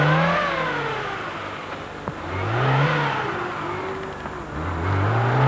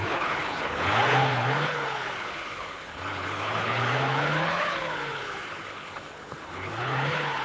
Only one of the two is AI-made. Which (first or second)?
second